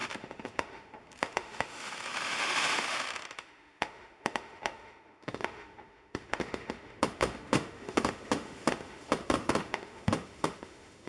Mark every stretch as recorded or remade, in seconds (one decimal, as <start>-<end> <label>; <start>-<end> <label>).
0.0-11.1 remade